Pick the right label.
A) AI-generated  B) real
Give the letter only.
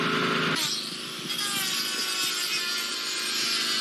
B